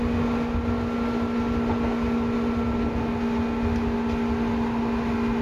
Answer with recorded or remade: recorded